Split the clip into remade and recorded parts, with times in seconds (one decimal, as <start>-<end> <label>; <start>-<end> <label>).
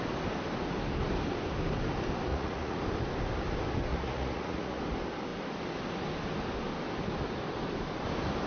0.0-2.3 recorded; 2.3-2.8 remade; 2.8-3.9 recorded; 3.9-4.8 remade; 4.8-8.5 recorded